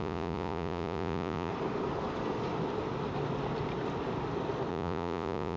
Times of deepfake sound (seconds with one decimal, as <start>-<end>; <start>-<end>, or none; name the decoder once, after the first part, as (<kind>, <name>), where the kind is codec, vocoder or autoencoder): 0.0-1.5 (vocoder, Vocos); 4.7-5.6